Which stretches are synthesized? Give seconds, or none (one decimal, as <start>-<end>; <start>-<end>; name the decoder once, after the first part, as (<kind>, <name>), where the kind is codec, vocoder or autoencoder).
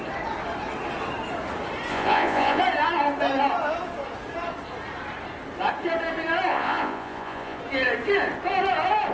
1.9-2.6 (vocoder, Vocos); 6.5-7.6